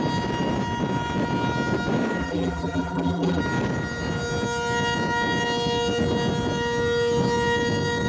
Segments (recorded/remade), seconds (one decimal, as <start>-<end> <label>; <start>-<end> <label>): 0.0-2.2 recorded; 2.2-3.4 remade; 3.4-8.1 recorded